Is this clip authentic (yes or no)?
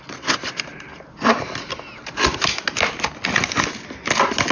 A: yes